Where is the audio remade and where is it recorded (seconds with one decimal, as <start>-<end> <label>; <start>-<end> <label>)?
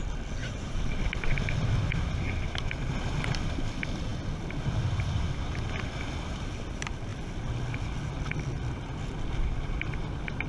0.0-0.4 recorded; 0.4-1.1 remade; 1.1-10.5 recorded